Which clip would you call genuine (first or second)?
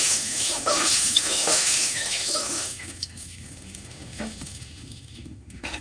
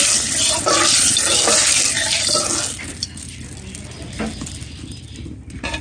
second